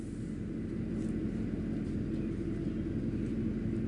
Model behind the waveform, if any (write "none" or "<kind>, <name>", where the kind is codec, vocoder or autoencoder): none